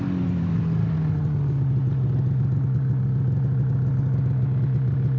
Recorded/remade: recorded